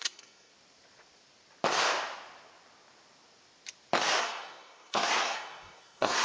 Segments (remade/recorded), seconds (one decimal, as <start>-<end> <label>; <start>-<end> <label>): 0.0-0.5 remade; 0.5-4.2 recorded; 4.2-6.2 remade